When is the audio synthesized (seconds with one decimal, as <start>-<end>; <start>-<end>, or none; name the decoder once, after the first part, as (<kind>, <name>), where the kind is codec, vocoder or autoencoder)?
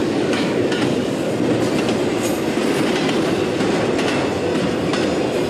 0.0-1.3 (codec, DAC)